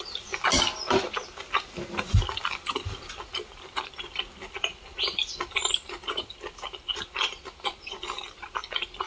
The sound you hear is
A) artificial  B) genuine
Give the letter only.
B